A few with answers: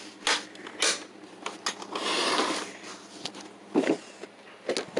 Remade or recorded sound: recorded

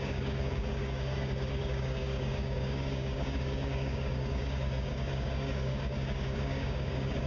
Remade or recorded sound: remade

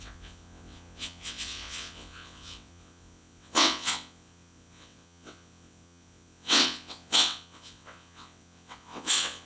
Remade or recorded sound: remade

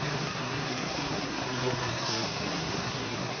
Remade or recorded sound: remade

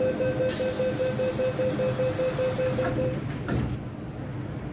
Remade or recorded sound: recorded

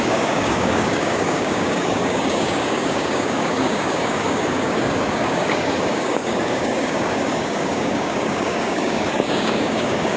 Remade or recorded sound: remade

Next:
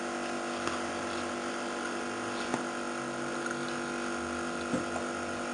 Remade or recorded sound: recorded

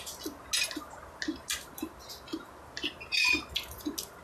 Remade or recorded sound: recorded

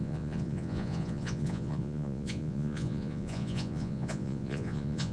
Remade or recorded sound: remade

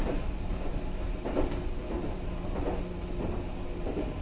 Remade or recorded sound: remade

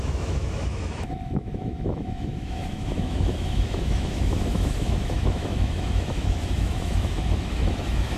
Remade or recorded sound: remade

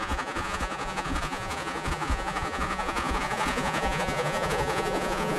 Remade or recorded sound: remade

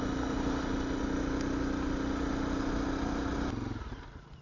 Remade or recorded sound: recorded